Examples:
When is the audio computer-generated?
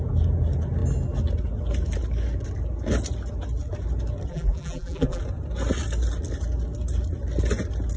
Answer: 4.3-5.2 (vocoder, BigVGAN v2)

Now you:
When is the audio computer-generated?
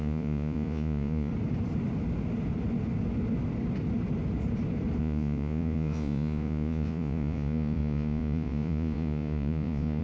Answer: 0.0-1.3 (vocoder, Vocos); 5.0-10.0